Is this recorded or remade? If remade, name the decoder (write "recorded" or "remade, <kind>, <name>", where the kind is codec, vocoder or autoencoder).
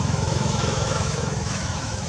remade, autoencoder, DAC-VAE